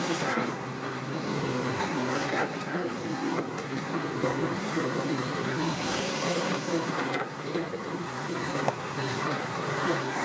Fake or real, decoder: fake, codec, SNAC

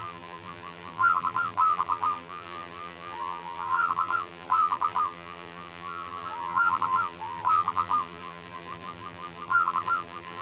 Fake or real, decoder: fake, vocoder, BigVGAN v2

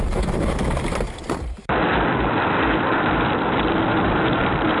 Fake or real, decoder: fake, vocoder, BigVGAN v2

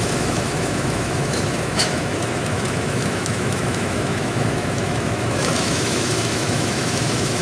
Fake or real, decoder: fake, autoencoder, DAC-VAE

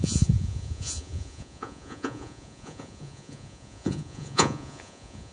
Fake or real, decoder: fake, vocoder, Vocos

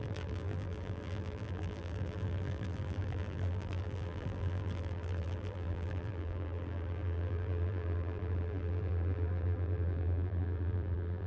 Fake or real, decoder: fake, vocoder, BigVGAN v2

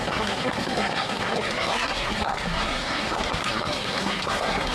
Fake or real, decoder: fake, codec, SNAC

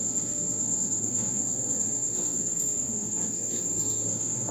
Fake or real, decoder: fake, codec, SNAC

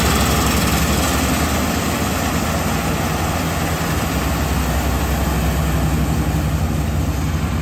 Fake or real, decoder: real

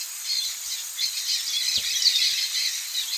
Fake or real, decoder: real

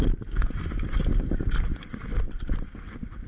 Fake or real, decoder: real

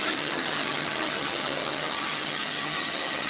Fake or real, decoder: fake, vocoder, HiFi-GAN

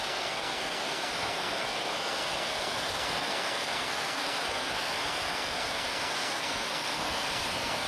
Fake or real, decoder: fake, codec, SNAC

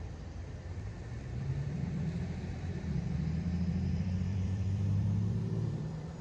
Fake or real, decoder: fake, vocoder, BigVGAN v2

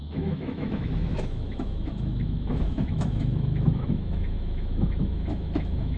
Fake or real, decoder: fake, autoencoder, DAC-VAE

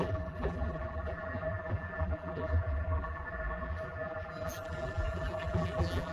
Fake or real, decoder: fake, vocoder, BigVGAN v2